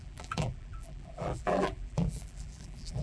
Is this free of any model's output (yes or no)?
no